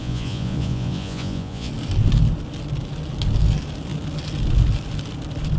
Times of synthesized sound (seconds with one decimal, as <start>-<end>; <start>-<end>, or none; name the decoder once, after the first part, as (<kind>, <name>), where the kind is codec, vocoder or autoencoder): 0.0-1.7 (vocoder, Vocos)